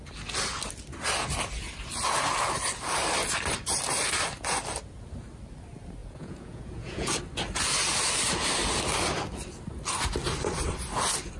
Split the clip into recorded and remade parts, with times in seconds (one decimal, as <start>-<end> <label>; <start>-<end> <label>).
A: 0.0-6.0 recorded; 6.0-7.2 remade; 7.2-11.4 recorded